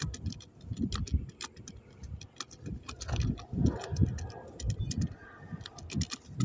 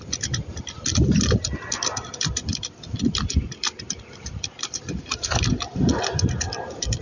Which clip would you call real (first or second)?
first